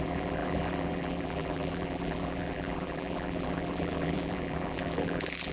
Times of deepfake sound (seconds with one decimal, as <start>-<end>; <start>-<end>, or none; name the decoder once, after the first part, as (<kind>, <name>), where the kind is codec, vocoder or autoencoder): 0.0-5.5 (vocoder, BigVGAN v2)